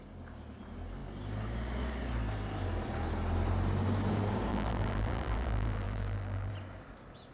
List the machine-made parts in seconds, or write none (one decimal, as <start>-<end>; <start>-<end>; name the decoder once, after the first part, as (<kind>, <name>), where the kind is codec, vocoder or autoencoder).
4.5-6.5 (vocoder, BigVGAN v2)